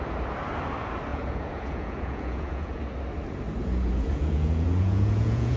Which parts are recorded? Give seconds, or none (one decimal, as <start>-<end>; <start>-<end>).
0.0-1.1; 2.8-3.6